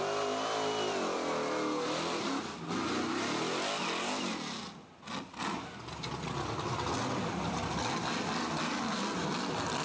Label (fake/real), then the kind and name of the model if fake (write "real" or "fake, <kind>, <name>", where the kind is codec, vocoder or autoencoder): real